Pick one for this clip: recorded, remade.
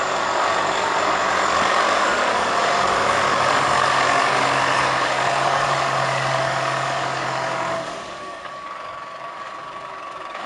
remade